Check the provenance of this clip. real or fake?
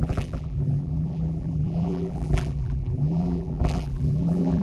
fake